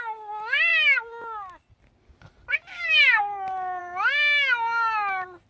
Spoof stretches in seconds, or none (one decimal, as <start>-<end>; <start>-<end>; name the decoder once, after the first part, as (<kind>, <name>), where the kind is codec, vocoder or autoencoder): none

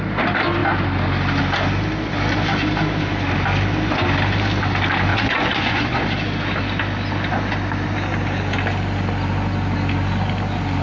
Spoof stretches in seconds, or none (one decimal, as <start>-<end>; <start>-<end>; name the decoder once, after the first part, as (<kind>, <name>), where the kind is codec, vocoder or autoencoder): 5.1-6.0 (vocoder, Vocos)